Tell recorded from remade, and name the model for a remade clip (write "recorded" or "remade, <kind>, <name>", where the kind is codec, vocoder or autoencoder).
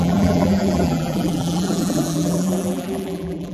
remade, vocoder, BigVGAN v2